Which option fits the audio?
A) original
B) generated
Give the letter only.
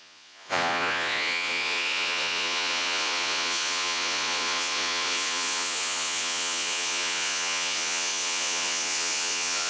B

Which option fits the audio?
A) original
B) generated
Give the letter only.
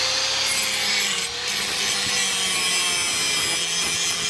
A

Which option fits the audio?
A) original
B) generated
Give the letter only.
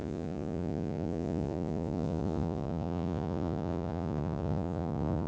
B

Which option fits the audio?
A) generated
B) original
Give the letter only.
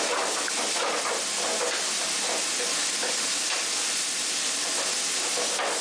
B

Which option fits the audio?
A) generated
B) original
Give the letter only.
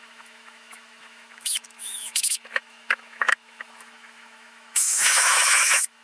A